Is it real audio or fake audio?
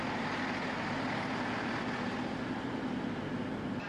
real